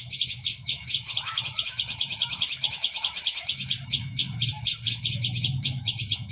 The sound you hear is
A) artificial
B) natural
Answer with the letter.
A